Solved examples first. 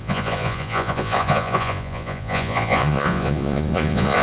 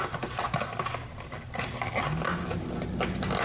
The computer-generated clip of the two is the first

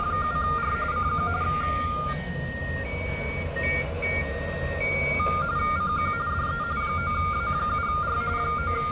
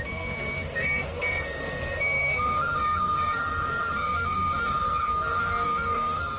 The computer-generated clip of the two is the second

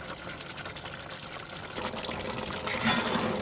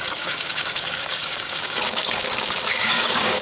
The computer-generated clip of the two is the second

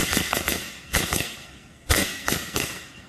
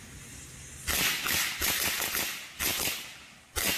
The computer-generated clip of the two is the first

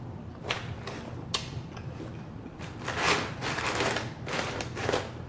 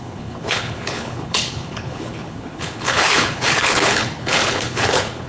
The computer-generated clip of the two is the second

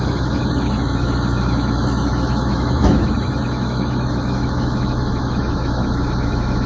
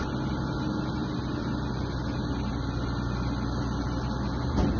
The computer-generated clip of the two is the first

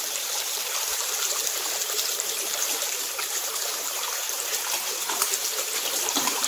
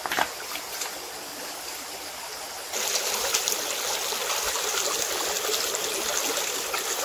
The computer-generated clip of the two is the first